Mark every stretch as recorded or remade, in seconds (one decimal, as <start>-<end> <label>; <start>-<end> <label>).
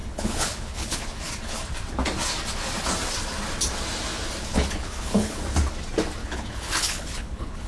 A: 0.0-1.3 remade; 1.3-4.5 recorded; 4.5-5.4 remade; 5.4-6.2 recorded; 6.2-7.7 remade